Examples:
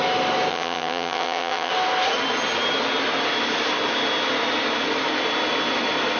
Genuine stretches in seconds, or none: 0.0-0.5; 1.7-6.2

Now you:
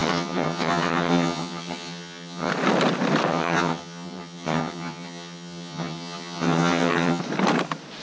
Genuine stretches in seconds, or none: 2.5-3.3; 7.2-8.0

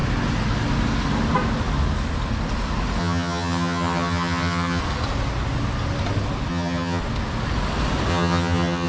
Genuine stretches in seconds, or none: 0.0-3.0; 4.8-6.5; 7.0-8.1